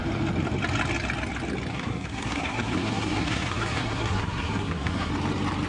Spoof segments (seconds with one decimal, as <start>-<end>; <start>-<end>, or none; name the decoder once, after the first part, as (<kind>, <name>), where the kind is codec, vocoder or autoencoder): 1.7-5.1 (codec, SNAC)